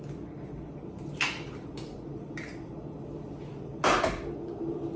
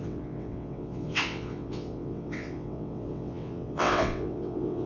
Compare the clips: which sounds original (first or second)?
first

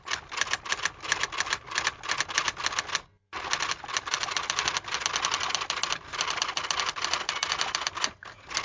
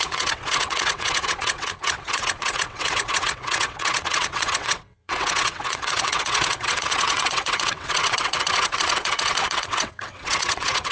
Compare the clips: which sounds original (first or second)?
first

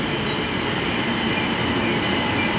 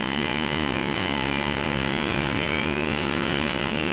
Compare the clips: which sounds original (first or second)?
first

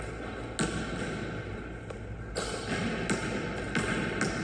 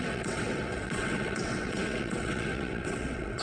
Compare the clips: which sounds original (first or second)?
first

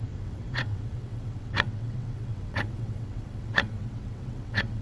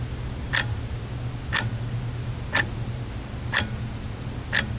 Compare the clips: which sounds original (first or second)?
second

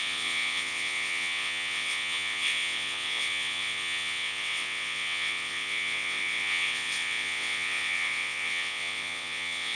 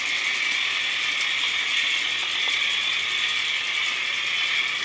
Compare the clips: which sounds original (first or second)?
second